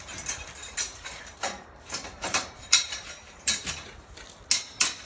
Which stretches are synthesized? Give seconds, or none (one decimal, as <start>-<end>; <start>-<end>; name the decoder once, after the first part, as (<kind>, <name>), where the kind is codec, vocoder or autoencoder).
0.6-3.7 (vocoder, BigVGAN v2)